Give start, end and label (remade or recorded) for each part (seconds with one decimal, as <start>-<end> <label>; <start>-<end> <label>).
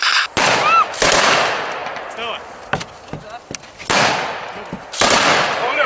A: 0.0-5.9 recorded